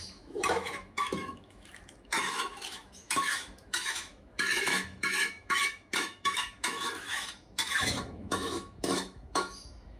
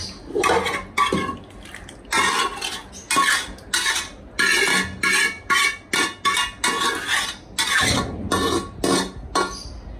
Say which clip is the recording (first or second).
second